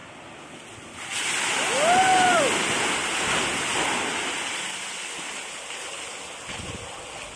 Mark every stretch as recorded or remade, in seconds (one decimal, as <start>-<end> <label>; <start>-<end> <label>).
0.0-7.4 recorded

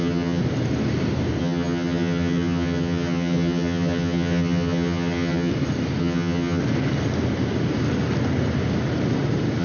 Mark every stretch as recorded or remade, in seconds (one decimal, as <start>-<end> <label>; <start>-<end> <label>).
0.0-0.4 remade; 0.4-1.4 recorded; 1.4-5.5 remade; 5.5-6.0 recorded; 6.0-6.6 remade; 6.6-9.6 recorded

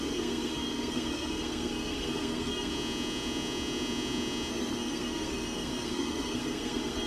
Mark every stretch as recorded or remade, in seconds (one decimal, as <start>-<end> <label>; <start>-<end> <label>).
0.0-2.7 remade; 2.7-4.5 recorded; 4.5-7.1 remade

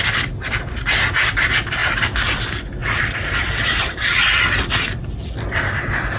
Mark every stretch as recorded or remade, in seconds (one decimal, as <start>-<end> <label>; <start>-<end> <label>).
0.0-1.8 recorded; 1.8-2.4 remade; 2.4-2.8 recorded; 2.8-5.6 remade; 5.6-6.2 recorded

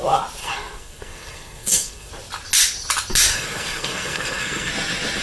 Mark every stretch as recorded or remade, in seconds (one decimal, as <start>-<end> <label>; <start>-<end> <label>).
0.0-0.4 recorded; 0.4-2.1 remade; 2.1-3.3 recorded; 3.3-4.7 remade; 4.7-5.2 recorded